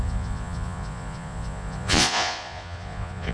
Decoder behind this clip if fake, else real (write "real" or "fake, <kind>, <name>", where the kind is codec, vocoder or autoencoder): fake, vocoder, Vocos